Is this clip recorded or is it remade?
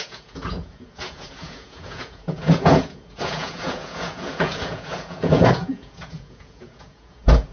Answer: remade